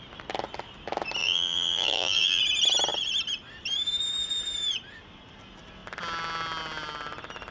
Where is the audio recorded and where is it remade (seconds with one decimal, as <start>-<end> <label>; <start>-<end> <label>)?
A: 0.0-1.2 recorded; 1.2-2.4 remade; 2.4-7.5 recorded